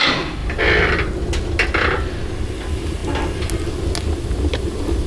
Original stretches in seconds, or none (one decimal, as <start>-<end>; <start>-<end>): 0.0-5.1